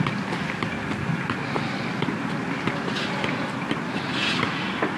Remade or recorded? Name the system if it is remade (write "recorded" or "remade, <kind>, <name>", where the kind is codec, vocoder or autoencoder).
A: recorded